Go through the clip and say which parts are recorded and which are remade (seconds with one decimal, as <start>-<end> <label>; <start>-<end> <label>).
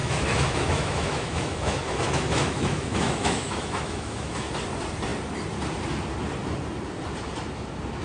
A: 0.0-4.5 remade; 4.5-8.0 recorded